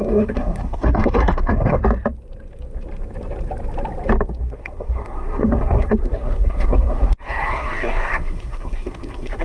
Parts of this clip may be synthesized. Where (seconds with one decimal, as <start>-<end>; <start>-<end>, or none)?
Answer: 0.0-1.8; 4.4-9.4